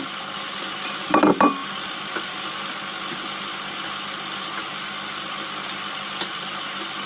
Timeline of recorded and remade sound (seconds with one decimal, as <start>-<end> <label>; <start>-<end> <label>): 0.0-7.1 recorded